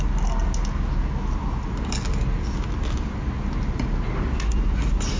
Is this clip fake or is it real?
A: real